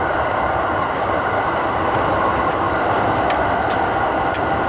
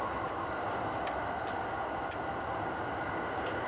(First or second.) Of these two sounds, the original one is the second